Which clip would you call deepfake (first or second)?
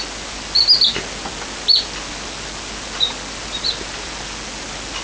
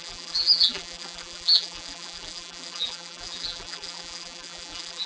second